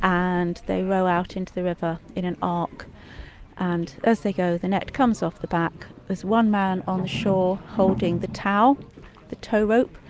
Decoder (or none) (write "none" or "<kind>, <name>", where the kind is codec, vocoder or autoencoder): none